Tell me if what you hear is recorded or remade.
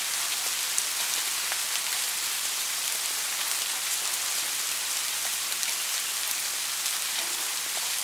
recorded